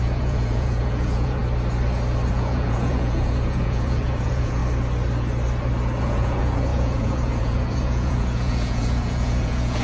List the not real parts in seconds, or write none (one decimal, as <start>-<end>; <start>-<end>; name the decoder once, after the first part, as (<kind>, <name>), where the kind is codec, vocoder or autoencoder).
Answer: 0.0-1.4 (vocoder, Vocos); 2.3-4.6; 6.0-9.8

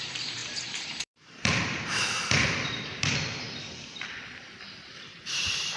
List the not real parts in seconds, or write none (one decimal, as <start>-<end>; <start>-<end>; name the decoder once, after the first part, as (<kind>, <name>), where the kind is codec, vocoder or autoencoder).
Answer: 0.0-5.8 (vocoder, BigVGAN v2)

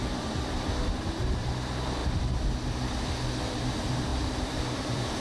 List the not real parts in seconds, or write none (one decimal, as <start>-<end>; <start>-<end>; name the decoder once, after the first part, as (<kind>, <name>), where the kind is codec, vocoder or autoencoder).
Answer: 1.2-2.0 (vocoder, BigVGAN v2); 3.4-5.2